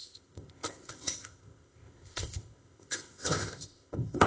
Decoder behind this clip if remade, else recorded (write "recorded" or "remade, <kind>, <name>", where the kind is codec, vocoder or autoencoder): remade, codec, ZipCodec